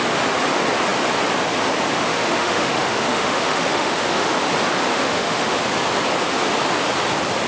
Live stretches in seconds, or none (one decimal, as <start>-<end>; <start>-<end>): 0.0-2.1; 4.3-4.9; 5.6-7.5